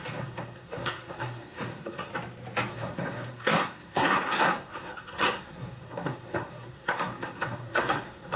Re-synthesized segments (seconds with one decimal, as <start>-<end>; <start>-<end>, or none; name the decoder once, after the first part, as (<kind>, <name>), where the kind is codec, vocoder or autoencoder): 0.0-2.1 (codec, SNAC); 2.7-8.4